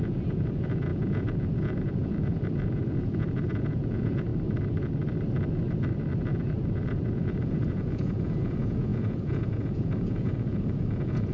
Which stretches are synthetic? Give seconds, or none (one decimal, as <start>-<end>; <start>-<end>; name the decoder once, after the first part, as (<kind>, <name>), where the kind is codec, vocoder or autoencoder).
0.0-4.3 (vocoder, Vocos); 6.3-11.3

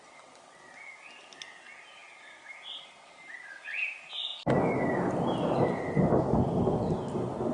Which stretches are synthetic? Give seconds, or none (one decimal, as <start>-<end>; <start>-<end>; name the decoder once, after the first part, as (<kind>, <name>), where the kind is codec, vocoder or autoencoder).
none

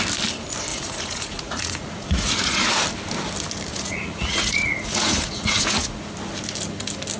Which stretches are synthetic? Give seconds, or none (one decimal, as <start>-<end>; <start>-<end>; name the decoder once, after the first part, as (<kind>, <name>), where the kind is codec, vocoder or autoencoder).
0.7-2.7 (vocoder, Vocos); 3.7-6.1

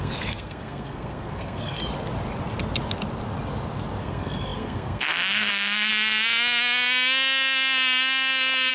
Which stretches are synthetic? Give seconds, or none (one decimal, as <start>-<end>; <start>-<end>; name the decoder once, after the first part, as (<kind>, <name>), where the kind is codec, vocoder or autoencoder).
0.0-1.8 (codec, SNAC); 4.0-5.9

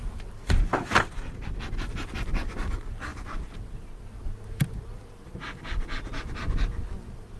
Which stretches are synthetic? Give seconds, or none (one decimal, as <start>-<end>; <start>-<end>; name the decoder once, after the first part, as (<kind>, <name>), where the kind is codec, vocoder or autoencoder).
none